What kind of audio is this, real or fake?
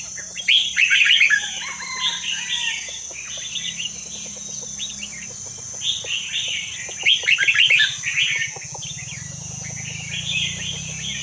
real